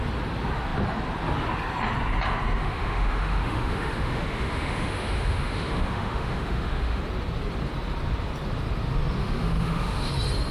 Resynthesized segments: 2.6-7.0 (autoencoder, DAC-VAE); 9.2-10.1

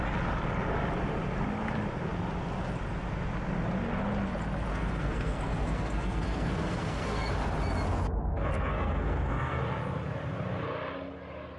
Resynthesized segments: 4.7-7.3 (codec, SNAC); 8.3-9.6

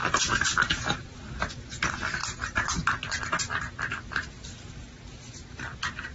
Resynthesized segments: 0.0-1.2 (vocoder, BigVGAN v2); 2.2-3.2